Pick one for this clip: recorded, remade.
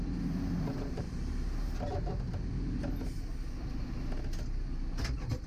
recorded